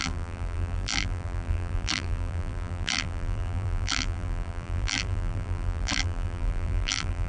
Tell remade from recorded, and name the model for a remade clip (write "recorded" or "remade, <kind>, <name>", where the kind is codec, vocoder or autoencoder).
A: remade, vocoder, BigVGAN v2